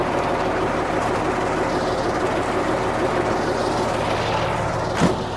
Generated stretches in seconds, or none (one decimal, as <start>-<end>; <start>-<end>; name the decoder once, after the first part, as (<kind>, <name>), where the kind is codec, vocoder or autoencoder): 0.0-3.2 (vocoder, BigVGAN v2)